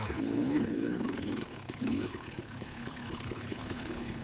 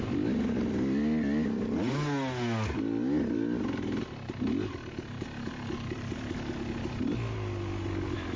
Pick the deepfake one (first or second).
first